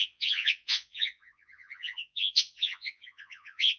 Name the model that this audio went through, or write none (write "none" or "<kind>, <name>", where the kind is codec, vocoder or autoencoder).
vocoder, Vocos